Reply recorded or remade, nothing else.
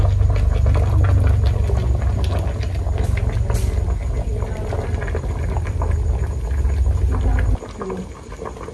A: recorded